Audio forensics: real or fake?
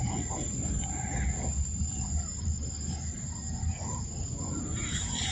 fake